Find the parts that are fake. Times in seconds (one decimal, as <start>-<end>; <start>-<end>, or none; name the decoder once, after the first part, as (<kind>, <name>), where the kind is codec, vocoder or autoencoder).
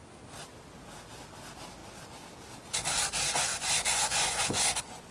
3.5-5.1 (vocoder, Vocos)